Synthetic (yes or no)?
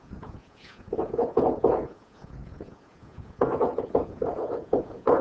yes